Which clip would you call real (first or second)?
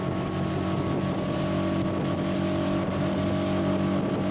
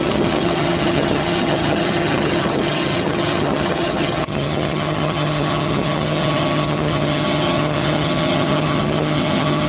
first